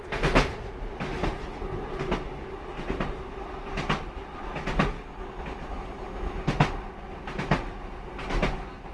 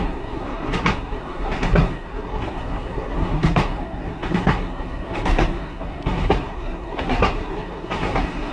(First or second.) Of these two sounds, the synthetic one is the second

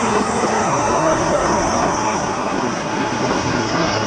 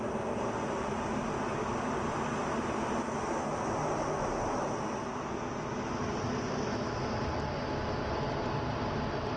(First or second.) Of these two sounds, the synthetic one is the first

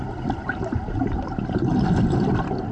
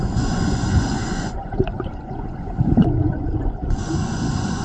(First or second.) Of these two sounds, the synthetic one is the second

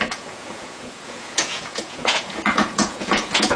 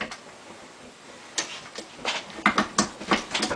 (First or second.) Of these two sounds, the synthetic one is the first